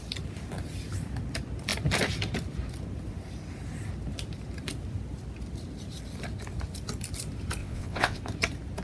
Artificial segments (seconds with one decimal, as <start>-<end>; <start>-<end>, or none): 7.6-8.2

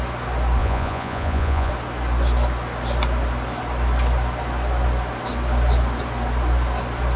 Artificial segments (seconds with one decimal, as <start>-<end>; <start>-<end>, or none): 0.6-1.7

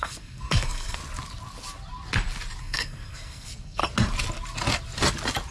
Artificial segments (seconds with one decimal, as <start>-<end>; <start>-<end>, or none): 0.0-1.0; 2.6-3.8

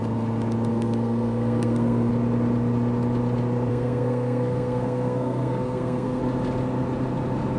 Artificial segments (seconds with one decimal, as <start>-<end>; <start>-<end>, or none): 0.7-2.1; 3.7-6.2

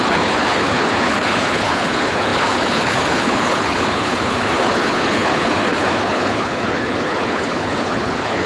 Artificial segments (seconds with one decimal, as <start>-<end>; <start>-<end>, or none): 0.0-8.5

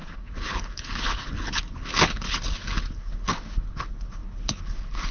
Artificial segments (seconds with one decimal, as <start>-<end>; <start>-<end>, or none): 0.0-5.1

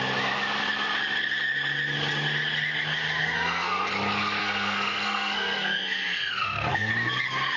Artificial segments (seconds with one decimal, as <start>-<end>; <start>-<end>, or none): 3.2-3.9; 4.4-6.9

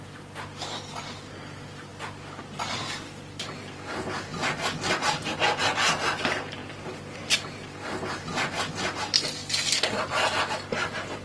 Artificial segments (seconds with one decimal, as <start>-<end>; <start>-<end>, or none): none